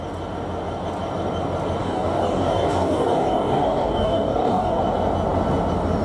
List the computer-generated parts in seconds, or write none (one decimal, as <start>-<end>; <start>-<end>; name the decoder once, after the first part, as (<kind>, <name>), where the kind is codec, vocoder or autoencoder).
1.8-4.8 (codec, DAC)